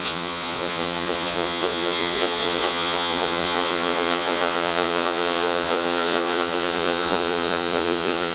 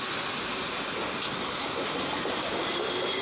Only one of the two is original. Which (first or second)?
second